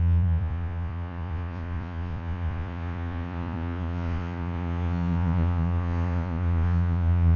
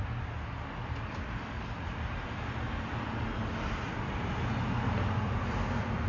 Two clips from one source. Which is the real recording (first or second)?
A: second